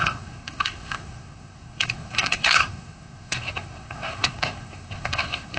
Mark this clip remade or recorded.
remade